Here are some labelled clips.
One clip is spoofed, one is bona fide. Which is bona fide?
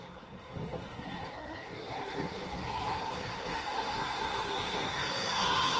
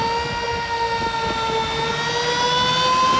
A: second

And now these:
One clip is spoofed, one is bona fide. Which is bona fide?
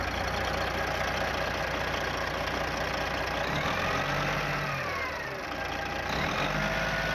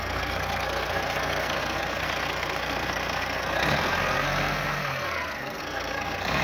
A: first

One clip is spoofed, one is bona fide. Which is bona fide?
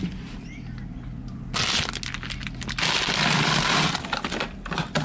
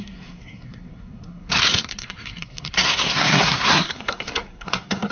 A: first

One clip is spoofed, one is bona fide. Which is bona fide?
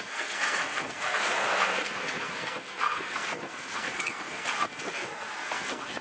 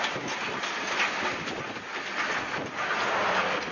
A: second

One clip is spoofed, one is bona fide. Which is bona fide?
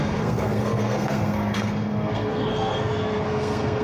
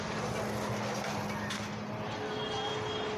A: second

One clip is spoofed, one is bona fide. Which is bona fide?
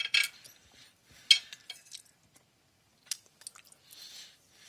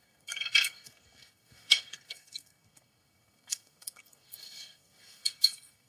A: first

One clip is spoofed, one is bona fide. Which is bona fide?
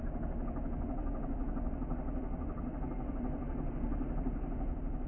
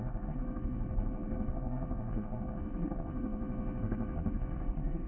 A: first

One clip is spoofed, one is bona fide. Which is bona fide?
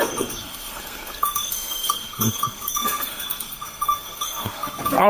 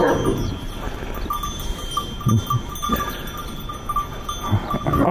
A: second